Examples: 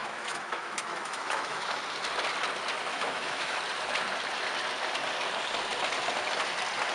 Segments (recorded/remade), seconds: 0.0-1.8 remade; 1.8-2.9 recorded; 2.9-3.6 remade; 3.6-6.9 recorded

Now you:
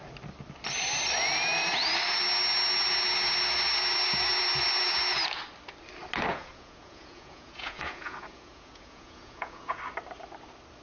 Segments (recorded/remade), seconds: 0.0-6.3 recorded; 6.3-9.8 remade; 9.8-10.8 recorded